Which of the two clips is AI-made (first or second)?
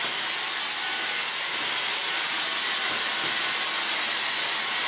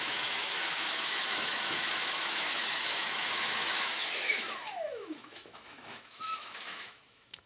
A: second